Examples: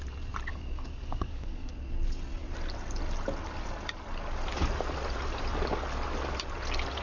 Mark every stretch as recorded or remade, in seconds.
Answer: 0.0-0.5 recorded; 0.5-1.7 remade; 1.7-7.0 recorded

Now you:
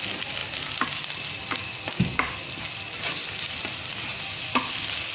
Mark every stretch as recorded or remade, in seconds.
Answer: 0.0-5.1 recorded

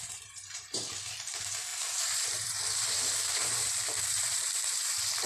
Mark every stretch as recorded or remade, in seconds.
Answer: 0.0-5.3 remade